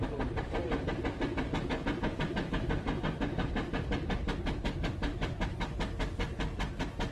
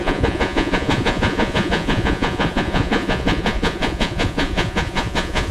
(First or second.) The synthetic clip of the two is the second